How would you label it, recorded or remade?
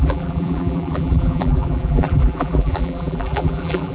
remade